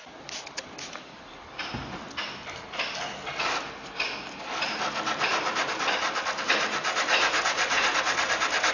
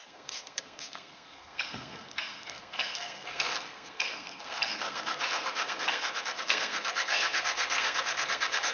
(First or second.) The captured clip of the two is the first